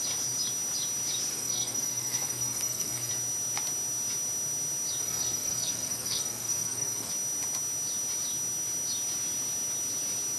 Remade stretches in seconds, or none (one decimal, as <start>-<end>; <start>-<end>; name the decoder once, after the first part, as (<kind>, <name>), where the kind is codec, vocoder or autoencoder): 1.3-3.1 (codec, SNAC); 5.0-7.1

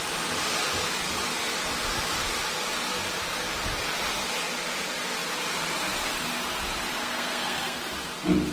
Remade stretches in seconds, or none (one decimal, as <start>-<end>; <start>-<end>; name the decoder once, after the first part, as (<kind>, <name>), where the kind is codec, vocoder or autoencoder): 7.0-7.8 (codec, SNAC)

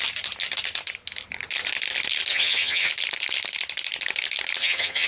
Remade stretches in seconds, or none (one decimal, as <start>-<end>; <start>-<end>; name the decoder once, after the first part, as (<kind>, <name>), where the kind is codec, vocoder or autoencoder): 2.3-2.9 (vocoder, HiFi-GAN); 4.6-5.1

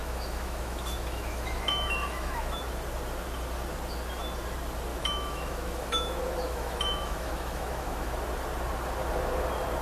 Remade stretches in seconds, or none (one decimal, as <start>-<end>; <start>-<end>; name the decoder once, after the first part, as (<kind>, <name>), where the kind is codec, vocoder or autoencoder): 0.0-2.6 (autoencoder, DAC-VAE); 4.9-8.1

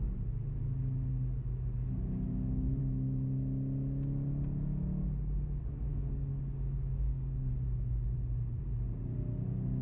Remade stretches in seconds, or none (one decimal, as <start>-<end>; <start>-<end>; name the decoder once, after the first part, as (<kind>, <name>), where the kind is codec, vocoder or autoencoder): 2.3-2.8 (codec, DAC); 5.9-7.5

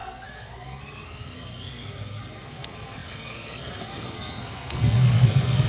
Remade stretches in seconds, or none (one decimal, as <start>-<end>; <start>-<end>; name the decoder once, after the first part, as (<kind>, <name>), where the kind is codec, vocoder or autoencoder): 0.0-5.7 (codec, SNAC)